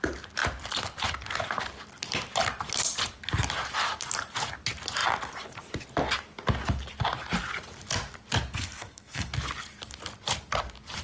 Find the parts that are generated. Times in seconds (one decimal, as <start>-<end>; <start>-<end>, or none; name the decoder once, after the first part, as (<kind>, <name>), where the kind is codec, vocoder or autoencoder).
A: 8.5-9.3 (codec, SNAC)